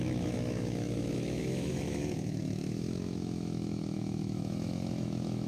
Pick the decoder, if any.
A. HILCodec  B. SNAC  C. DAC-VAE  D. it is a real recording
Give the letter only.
C